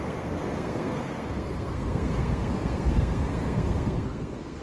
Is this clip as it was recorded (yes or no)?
no